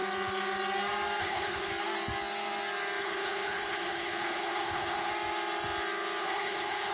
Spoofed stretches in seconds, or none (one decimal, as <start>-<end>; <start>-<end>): 1.2-1.7; 3.0-5.1; 6.2-6.9